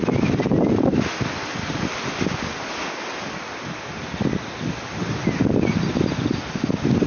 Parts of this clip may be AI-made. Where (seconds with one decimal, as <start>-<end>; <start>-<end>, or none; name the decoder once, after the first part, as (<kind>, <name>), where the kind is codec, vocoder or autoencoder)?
none